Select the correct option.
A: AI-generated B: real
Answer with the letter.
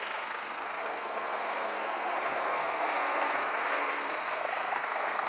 A